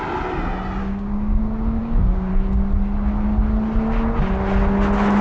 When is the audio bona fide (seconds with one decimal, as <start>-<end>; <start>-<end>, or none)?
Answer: 0.0-0.8; 1.4-1.8; 2.3-5.2